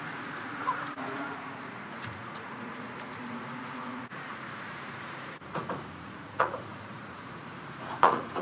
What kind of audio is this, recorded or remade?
remade